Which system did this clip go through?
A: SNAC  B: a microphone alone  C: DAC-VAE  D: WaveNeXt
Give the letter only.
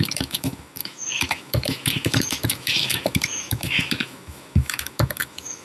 C